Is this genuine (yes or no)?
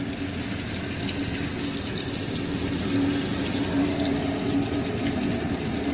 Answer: yes